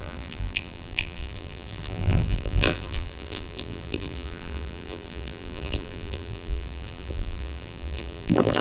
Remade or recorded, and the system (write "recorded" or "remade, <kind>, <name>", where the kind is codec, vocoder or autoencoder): remade, vocoder, BigVGAN v2